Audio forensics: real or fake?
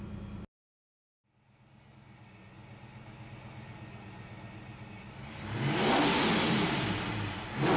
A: real